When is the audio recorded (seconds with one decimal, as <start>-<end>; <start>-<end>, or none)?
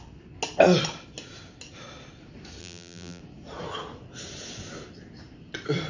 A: 0.0-2.6; 3.2-5.9